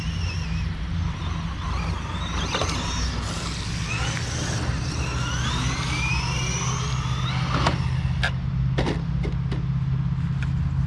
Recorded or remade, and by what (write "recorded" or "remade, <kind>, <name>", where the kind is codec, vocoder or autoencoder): recorded